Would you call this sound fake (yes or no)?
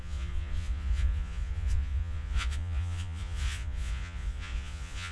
yes